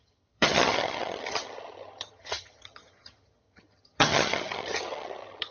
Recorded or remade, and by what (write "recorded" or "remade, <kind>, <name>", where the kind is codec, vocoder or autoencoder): remade, vocoder, HiFi-GAN